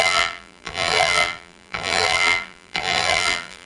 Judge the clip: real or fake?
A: fake